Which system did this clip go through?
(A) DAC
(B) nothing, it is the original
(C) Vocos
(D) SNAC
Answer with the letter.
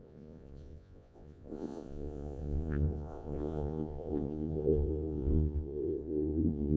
C